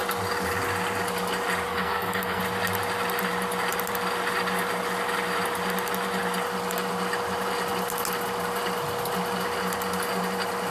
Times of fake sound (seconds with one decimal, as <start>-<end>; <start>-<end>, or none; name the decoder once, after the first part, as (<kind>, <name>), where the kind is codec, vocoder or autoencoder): 1.7-2.4 (codec, SNAC)